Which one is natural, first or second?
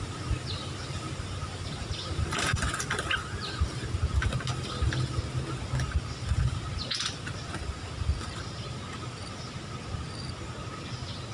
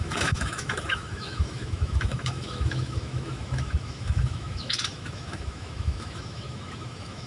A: first